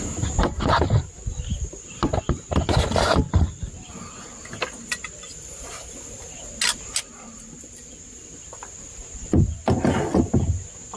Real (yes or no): yes